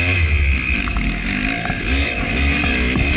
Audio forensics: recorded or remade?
recorded